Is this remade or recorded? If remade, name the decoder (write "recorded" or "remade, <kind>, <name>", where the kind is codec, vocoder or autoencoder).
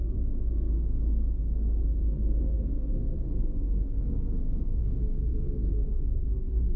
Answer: remade, codec, SNAC